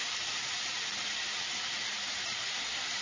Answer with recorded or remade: recorded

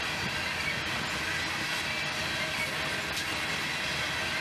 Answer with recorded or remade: recorded